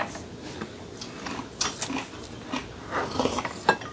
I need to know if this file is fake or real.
real